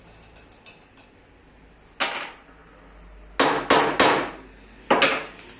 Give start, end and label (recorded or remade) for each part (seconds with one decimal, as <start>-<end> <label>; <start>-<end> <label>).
0.0-5.6 recorded